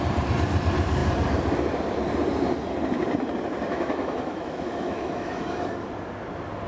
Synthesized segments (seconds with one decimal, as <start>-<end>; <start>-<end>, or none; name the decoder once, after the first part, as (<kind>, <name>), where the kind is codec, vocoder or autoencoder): 3.7-5.7 (autoencoder, DAC-VAE)